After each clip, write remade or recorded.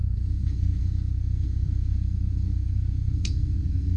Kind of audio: remade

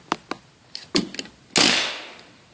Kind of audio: recorded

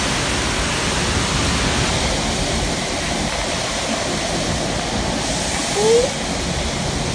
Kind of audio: recorded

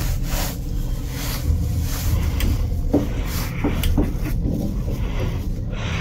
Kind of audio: recorded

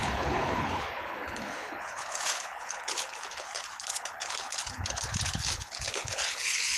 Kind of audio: remade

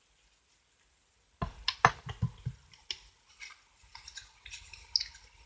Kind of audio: recorded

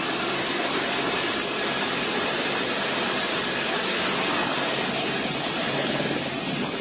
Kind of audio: recorded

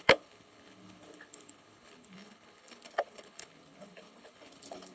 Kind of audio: remade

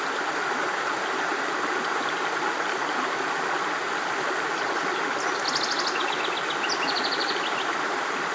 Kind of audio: recorded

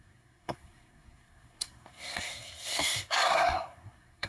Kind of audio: remade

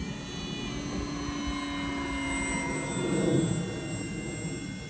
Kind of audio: recorded